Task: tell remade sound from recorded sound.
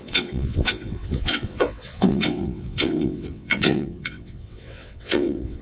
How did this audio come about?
remade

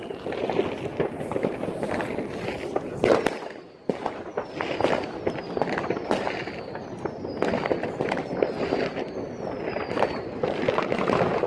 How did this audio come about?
recorded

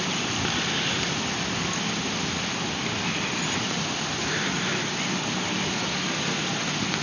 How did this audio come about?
recorded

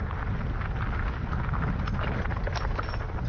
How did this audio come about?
recorded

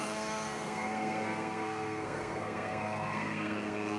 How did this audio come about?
remade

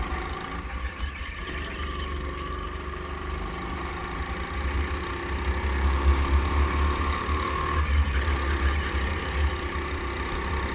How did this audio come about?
recorded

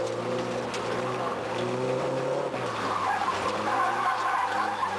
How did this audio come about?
recorded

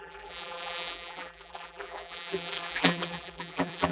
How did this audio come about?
remade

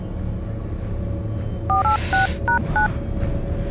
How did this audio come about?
recorded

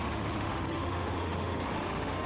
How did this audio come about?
remade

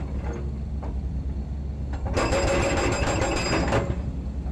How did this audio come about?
recorded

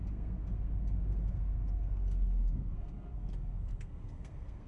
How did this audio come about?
remade